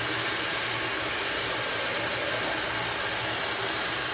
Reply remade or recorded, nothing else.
recorded